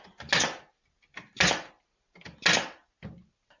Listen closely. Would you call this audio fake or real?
real